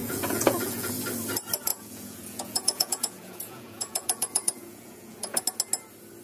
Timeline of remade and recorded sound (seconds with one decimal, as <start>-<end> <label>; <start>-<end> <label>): 0.0-0.9 remade; 0.9-1.7 recorded; 1.7-5.4 remade; 5.4-6.2 recorded